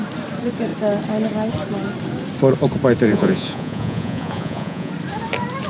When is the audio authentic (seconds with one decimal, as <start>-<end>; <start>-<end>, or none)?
0.0-3.1; 4.9-5.7